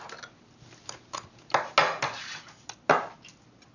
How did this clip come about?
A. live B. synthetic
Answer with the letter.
A